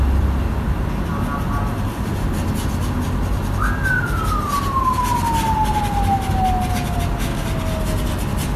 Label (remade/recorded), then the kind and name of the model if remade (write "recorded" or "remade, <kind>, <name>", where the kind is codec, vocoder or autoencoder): recorded